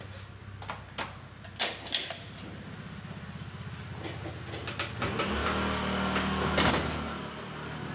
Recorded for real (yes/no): yes